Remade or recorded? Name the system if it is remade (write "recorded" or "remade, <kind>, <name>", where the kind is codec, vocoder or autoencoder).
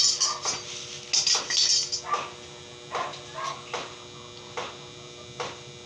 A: recorded